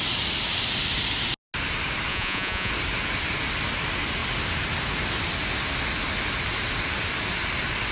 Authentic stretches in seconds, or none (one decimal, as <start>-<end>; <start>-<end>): 0.0-2.1; 2.7-7.9